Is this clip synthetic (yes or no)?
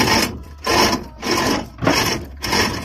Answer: no